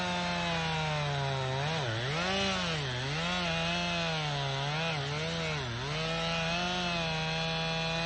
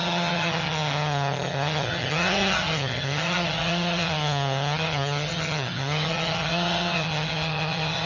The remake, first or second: second